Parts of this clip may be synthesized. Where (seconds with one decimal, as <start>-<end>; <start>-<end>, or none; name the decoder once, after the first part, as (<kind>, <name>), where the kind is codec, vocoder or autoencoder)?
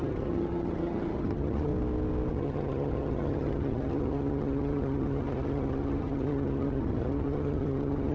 0.0-1.7 (vocoder, HiFi-GAN); 2.3-8.1